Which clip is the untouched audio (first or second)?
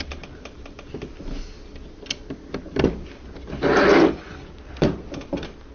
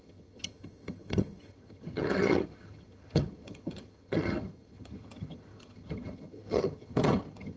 first